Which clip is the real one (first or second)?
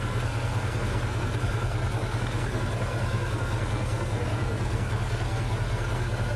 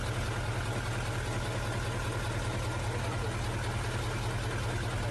second